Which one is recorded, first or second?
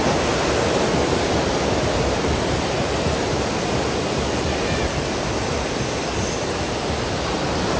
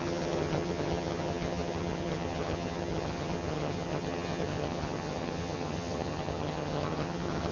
first